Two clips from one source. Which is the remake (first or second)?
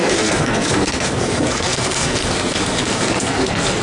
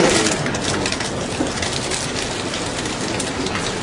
first